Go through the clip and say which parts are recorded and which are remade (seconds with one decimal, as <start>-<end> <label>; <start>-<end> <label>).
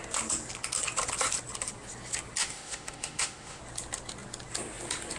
0.0-2.4 recorded; 2.4-3.6 remade; 3.6-5.2 recorded